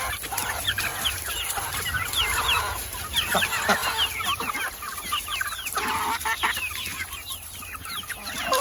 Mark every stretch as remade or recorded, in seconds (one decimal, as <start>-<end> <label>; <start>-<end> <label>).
0.0-0.9 recorded; 0.9-2.6 remade; 2.6-6.9 recorded; 6.9-7.8 remade; 7.8-8.6 recorded